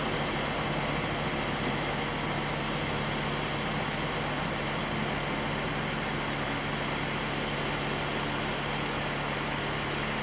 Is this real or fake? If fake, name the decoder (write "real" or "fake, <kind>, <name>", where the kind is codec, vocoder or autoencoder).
real